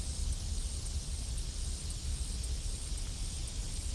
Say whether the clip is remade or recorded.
recorded